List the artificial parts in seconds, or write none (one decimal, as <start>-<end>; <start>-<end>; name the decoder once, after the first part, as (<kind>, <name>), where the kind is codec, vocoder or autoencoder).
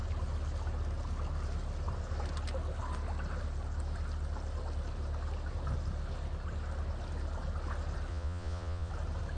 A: 8.1-8.9 (vocoder, Vocos)